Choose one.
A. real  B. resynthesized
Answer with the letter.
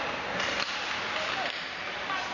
A